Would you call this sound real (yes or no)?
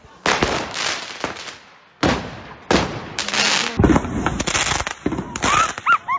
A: yes